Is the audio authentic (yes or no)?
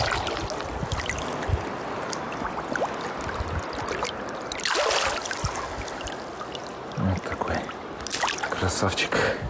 yes